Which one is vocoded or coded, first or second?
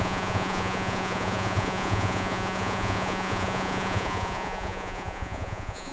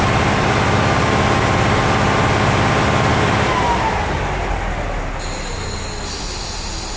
first